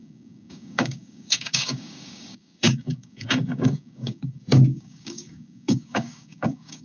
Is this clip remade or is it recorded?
remade